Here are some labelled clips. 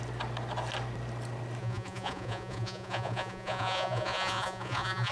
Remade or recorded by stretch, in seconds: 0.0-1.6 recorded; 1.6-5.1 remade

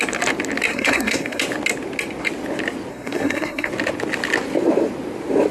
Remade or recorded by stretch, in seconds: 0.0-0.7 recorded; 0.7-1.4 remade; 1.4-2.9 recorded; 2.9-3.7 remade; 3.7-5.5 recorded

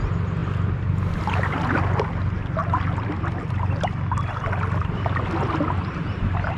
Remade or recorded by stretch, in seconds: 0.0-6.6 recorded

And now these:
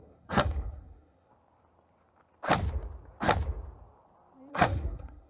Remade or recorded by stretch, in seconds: 0.0-1.3 remade; 1.3-4.5 recorded; 4.5-5.3 remade